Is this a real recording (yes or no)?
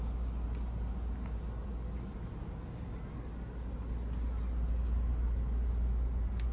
yes